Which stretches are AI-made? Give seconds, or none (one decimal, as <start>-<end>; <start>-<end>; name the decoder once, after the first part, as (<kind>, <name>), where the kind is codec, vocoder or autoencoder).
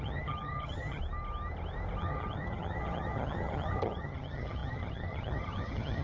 0.0-1.0 (vocoder, HiFi-GAN); 2.0-6.0